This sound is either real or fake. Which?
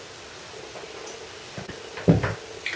real